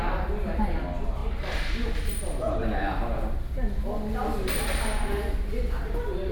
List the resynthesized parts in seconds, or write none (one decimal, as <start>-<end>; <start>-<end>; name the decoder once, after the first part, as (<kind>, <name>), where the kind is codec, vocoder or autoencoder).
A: none